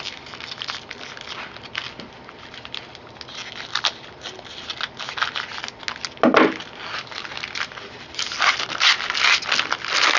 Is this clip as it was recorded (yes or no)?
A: yes